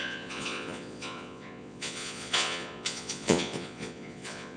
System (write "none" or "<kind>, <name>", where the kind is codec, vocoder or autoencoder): vocoder, Vocos